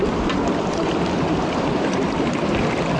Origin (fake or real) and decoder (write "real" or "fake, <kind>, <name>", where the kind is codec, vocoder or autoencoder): real